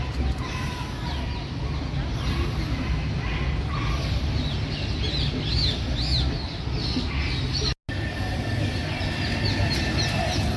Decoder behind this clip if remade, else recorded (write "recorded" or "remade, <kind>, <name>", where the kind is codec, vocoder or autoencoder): recorded